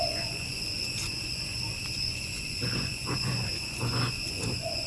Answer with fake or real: fake